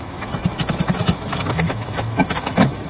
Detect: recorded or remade remade